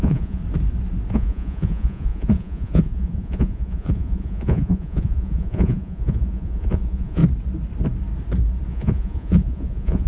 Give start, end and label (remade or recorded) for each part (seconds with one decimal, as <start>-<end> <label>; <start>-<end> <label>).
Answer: 0.0-0.4 remade; 0.4-1.1 recorded; 1.1-7.2 remade; 7.2-8.7 recorded; 8.7-10.1 remade